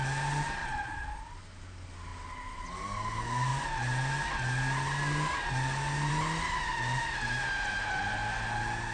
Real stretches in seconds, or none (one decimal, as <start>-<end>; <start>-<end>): 0.0-0.6; 1.2-8.9